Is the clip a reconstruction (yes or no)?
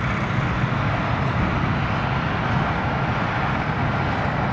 no